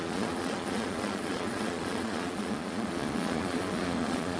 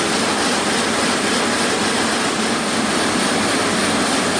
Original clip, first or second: second